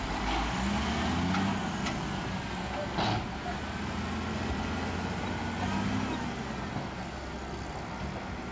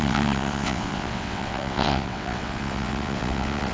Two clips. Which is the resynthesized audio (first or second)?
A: second